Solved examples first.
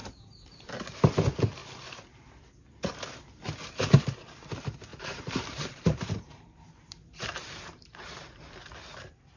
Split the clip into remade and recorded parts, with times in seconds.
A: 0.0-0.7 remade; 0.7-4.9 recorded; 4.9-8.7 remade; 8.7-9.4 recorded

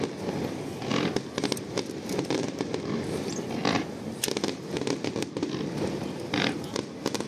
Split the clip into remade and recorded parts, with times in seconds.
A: 0.0-7.3 recorded

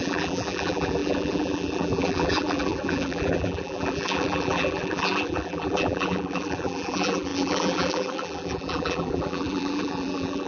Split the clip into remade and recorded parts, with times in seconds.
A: 0.0-10.5 remade

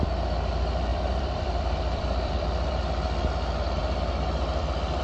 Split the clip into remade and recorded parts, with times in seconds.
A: 0.0-0.9 recorded; 0.9-2.8 remade; 2.8-5.0 recorded

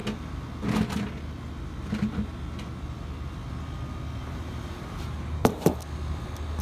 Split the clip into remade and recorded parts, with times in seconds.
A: 0.0-4.2 recorded; 4.2-5.7 remade; 5.7-6.6 recorded

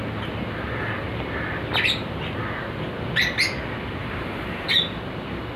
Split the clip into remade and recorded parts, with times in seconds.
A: 0.0-4.0 recorded; 4.0-4.7 remade; 4.7-5.6 recorded